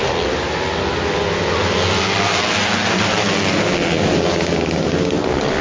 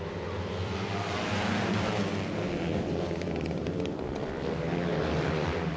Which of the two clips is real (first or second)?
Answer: first